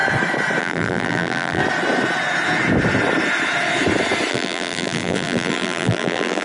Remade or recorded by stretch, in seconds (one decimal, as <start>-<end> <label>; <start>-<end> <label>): 0.0-0.6 recorded; 0.6-1.6 remade; 1.6-4.3 recorded; 4.3-6.4 remade